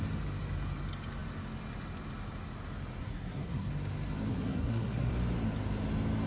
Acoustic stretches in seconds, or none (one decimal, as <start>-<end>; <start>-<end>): 0.0-3.0; 3.7-4.3; 5.1-6.3

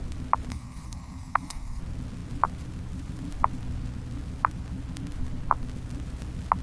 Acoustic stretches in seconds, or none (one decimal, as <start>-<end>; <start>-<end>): 0.0-0.5; 1.8-6.6

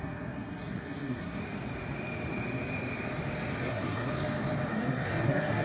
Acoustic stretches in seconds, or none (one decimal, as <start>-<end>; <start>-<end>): 1.4-3.6; 4.1-4.7

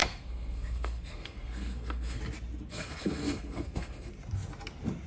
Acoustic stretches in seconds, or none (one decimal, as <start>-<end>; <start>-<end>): 2.2-2.7; 4.1-5.1

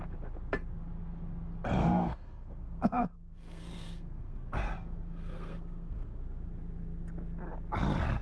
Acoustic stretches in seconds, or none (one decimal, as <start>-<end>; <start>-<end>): 0.0-1.8; 6.2-8.2